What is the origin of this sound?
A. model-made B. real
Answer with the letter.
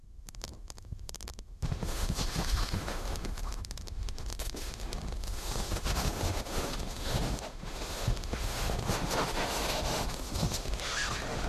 A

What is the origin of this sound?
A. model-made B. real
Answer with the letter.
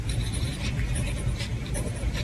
B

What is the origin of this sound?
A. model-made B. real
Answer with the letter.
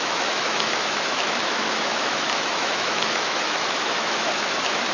A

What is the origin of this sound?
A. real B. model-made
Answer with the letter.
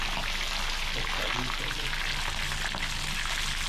A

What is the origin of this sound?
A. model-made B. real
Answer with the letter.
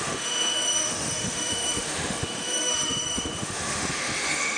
A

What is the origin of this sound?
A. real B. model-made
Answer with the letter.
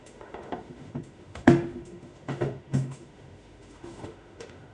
B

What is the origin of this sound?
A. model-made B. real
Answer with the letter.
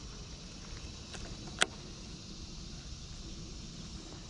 B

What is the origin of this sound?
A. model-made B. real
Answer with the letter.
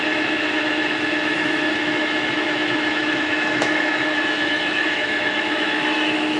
A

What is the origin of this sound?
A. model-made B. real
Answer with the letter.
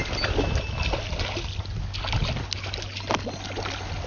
B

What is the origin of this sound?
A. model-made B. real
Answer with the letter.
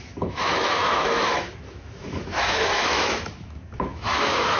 A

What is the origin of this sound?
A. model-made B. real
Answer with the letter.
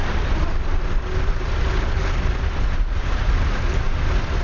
B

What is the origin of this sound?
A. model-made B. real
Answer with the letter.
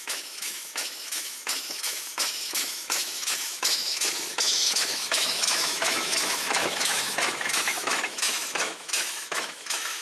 A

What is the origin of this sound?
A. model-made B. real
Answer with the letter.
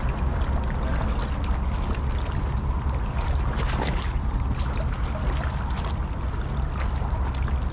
B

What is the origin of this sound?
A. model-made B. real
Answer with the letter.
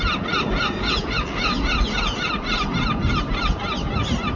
B